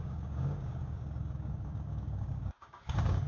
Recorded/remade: remade